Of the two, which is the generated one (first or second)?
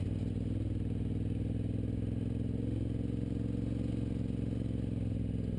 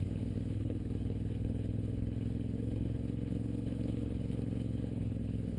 second